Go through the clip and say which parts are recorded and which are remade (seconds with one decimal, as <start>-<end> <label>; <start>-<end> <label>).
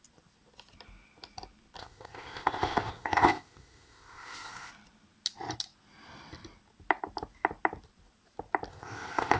0.0-1.8 recorded; 1.8-4.7 remade; 4.7-8.7 recorded; 8.7-9.4 remade